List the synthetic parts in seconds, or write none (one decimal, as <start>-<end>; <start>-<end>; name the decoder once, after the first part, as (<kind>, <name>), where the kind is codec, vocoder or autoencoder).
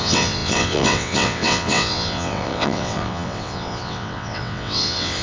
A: 0.0-5.2 (vocoder, WaveNeXt)